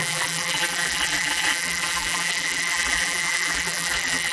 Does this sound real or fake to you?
fake